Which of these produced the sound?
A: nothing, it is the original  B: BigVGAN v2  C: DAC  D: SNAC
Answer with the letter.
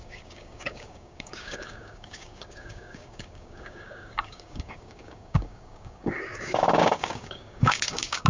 C